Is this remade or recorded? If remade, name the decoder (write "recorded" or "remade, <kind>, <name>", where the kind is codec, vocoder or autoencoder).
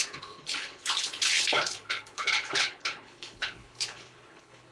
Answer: remade, codec, HILCodec